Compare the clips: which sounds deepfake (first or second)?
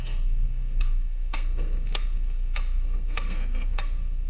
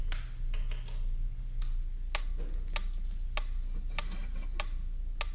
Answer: first